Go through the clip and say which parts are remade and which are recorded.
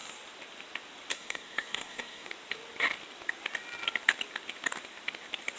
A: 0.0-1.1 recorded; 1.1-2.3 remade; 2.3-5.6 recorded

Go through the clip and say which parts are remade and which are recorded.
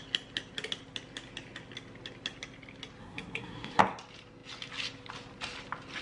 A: 0.0-3.0 recorded; 3.0-3.8 remade; 3.8-6.0 recorded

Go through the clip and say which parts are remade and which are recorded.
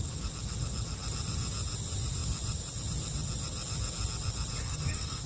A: 0.0-4.6 recorded; 4.6-5.3 remade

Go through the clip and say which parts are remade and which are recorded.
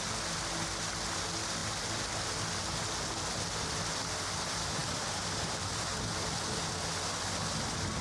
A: 0.0-8.0 recorded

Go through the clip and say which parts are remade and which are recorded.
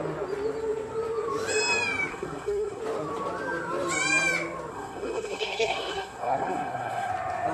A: 0.0-2.1 recorded; 2.1-2.8 remade; 2.8-4.7 recorded; 4.7-7.1 remade; 7.1-7.5 recorded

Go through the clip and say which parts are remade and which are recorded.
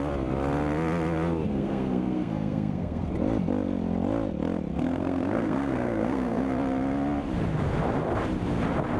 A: 0.0-1.5 recorded; 1.5-3.1 remade; 3.1-4.7 recorded; 4.7-6.5 remade; 6.5-9.0 recorded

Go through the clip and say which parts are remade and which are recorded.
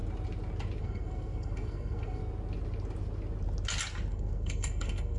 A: 0.0-0.8 recorded; 0.8-2.2 remade; 2.2-4.1 recorded; 4.1-5.2 remade